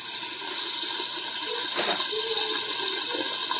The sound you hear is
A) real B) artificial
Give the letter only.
A